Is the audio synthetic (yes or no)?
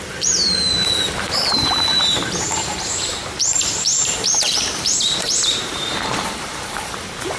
yes